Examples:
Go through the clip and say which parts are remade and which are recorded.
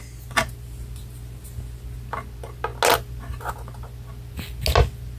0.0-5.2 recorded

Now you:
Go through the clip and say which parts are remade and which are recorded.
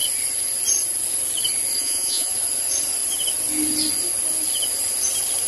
0.0-1.8 recorded; 1.8-2.3 remade; 2.3-5.5 recorded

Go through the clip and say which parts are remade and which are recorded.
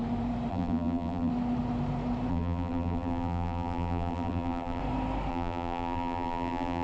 0.0-0.5 recorded; 0.5-1.3 remade; 1.3-2.3 recorded; 2.3-4.8 remade; 4.8-5.3 recorded; 5.3-6.8 remade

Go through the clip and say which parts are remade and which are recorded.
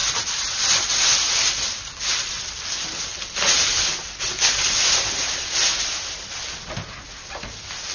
0.0-7.9 recorded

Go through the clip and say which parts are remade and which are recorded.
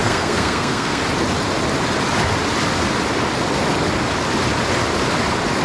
0.0-1.0 remade; 1.0-5.6 recorded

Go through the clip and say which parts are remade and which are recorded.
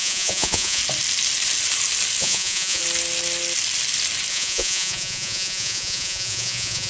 0.0-0.8 remade; 0.8-2.2 recorded; 2.2-2.8 remade; 2.8-4.3 recorded; 4.3-6.9 remade